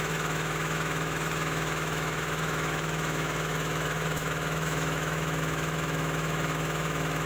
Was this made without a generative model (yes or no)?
no